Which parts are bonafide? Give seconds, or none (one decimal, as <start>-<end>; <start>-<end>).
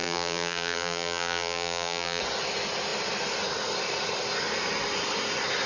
2.2-5.7